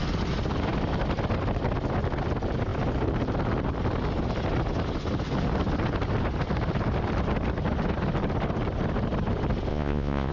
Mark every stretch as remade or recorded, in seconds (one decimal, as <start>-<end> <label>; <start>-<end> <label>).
0.0-9.7 recorded; 9.7-10.3 remade